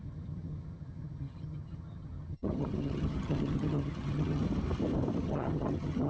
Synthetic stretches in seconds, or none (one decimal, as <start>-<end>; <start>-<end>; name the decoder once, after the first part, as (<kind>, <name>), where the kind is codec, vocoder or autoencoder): 0.0-4.4 (vocoder, HiFi-GAN); 5.2-6.1